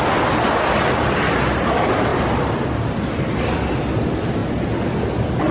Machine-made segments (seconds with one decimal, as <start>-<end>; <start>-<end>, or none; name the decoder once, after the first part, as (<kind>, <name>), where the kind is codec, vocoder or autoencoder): none